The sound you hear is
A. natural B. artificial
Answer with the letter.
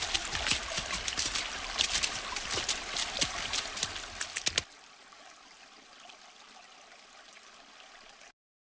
A